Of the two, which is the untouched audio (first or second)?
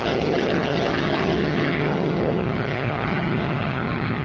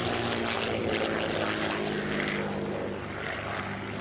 second